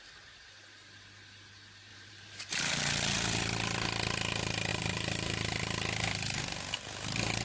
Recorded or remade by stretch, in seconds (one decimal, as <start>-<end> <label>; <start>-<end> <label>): 0.0-1.9 recorded; 1.9-2.8 remade; 2.8-4.7 recorded; 4.7-6.4 remade; 6.4-7.4 recorded

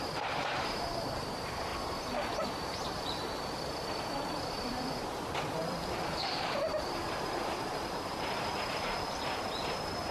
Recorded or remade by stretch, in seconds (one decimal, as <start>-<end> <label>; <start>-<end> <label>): 0.0-10.1 remade